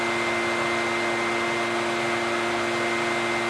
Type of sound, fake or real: real